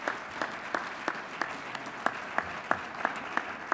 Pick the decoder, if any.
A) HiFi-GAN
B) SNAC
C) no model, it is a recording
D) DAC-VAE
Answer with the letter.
C